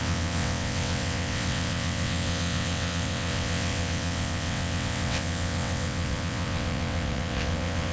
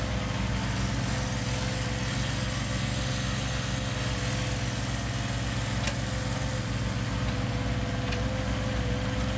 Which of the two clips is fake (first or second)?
first